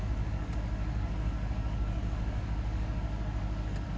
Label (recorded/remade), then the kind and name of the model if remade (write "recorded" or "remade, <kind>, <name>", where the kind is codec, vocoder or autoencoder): remade, codec, DAC